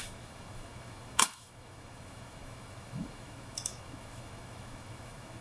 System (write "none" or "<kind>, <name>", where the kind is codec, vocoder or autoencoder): autoencoder, DAC-VAE